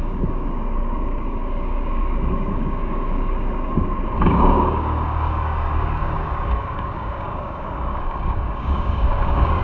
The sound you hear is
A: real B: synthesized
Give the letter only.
B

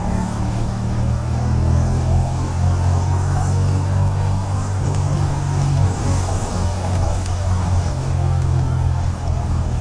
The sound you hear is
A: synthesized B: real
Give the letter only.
A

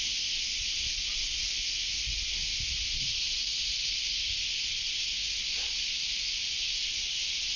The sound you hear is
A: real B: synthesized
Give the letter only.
A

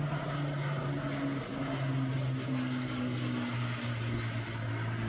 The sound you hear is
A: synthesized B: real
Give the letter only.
B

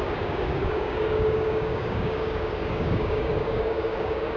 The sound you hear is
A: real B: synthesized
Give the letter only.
B